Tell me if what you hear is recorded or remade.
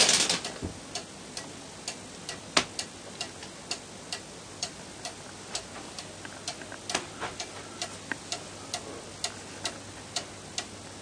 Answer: recorded